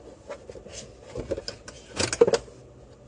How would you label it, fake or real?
real